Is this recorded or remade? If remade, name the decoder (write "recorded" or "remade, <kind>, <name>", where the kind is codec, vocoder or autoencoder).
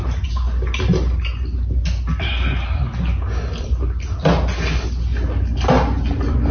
recorded